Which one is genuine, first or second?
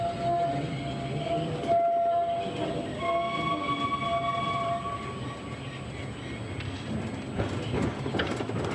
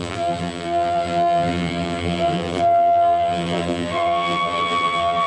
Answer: first